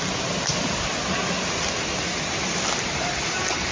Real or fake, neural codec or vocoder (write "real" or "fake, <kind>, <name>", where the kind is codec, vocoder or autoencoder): real